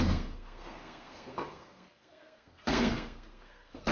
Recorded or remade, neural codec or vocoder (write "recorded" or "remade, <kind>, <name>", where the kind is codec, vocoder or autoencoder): remade, codec, SNAC